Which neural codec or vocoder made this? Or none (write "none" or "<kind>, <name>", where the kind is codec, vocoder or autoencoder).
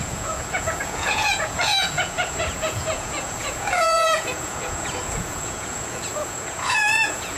vocoder, Vocos